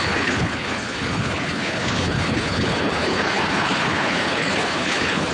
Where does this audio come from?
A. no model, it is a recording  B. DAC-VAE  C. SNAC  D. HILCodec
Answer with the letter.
D